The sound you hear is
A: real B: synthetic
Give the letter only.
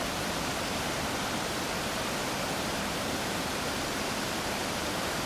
B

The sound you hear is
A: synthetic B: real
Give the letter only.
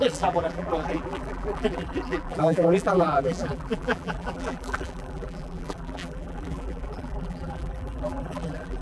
A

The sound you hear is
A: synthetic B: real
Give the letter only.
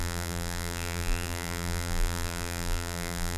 A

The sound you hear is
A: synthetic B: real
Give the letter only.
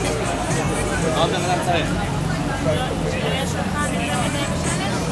B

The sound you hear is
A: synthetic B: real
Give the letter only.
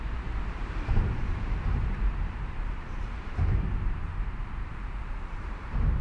A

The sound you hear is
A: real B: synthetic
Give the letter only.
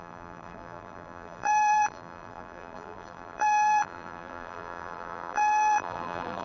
B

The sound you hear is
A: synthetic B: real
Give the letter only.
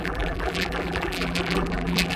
A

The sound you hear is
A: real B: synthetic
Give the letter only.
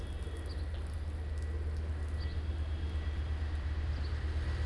A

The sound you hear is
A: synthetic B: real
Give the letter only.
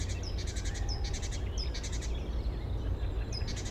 B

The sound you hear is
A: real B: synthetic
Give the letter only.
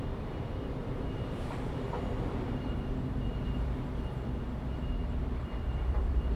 B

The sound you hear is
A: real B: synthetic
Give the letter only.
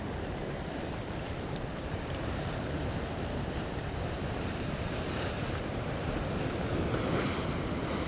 B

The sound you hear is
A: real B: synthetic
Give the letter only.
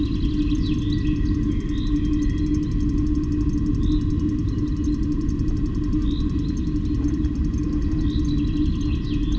A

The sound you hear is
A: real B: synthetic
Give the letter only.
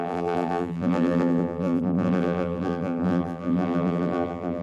B